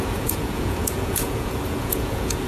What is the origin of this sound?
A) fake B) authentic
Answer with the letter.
A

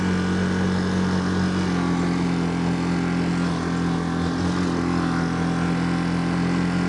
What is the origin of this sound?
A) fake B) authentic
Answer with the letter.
B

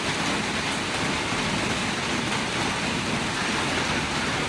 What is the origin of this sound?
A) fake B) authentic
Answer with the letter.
B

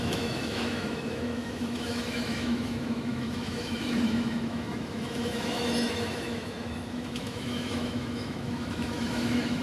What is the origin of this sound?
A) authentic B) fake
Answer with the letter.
B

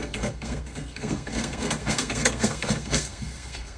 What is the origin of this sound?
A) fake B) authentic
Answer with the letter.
A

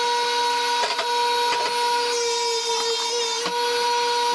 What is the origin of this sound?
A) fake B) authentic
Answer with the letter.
B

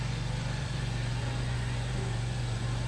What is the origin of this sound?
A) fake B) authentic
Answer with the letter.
A